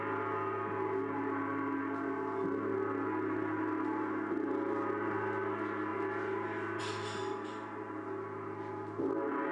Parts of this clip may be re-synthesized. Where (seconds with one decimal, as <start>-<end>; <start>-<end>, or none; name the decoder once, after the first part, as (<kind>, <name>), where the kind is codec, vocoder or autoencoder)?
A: none